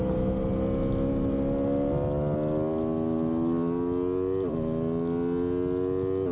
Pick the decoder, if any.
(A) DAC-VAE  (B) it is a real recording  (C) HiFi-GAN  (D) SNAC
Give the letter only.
B